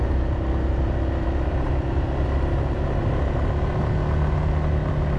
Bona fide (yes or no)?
yes